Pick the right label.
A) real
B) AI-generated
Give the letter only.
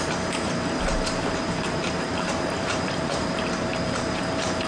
B